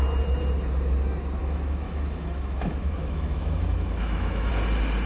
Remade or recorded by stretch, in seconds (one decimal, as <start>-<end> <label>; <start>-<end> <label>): 0.0-1.4 recorded; 1.4-4.5 remade; 4.5-5.1 recorded